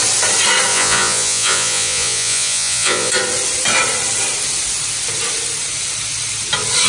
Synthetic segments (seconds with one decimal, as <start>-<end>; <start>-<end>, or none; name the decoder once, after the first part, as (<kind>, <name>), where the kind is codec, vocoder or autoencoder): 0.7-3.1 (vocoder, Vocos)